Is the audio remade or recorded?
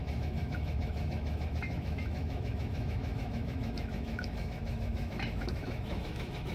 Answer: remade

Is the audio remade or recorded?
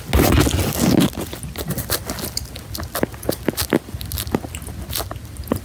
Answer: recorded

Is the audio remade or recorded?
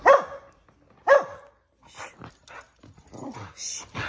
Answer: recorded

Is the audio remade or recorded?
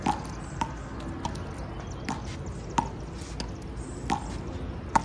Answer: recorded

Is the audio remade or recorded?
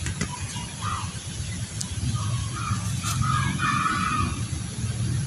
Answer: recorded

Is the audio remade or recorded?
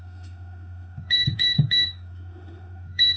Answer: remade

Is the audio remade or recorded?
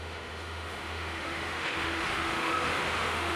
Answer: remade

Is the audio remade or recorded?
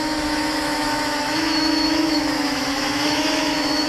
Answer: remade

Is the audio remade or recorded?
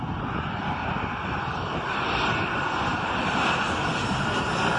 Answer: recorded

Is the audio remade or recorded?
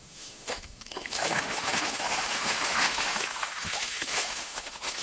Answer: remade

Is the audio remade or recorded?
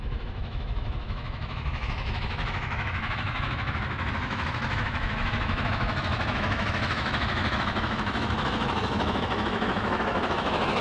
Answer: remade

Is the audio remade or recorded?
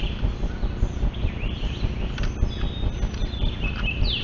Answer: recorded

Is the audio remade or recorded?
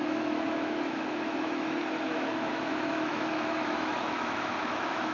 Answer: remade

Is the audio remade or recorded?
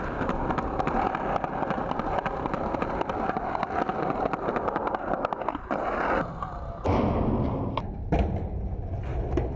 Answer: recorded